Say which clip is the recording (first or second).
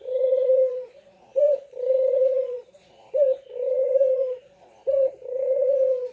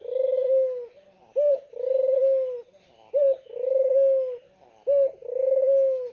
second